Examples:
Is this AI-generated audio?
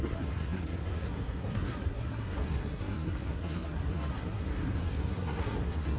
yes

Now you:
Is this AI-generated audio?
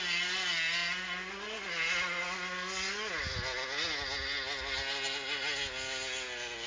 no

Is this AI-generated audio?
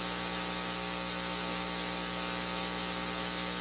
no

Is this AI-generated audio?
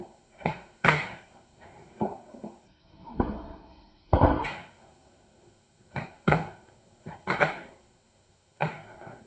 yes